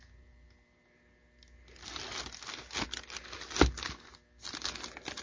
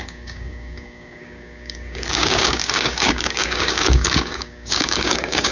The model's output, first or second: second